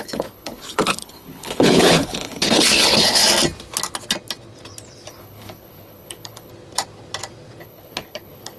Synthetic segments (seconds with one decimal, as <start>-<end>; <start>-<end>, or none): 0.0-3.2; 5.1-6.5; 7.6-8.6